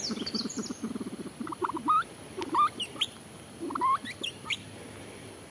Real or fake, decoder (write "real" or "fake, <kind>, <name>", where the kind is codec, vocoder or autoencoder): real